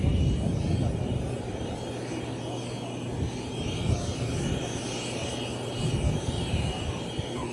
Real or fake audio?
real